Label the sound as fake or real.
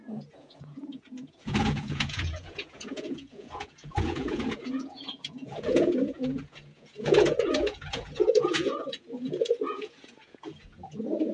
fake